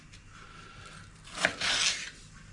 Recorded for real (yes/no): yes